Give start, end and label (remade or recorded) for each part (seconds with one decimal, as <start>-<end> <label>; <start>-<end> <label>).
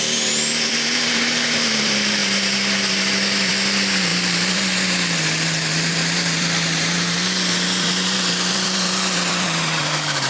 0.0-10.3 remade